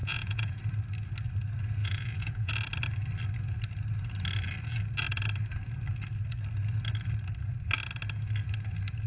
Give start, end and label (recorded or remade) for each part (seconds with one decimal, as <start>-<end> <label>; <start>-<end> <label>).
0.0-0.6 remade; 0.6-1.8 recorded; 1.8-2.5 remade; 2.5-9.1 recorded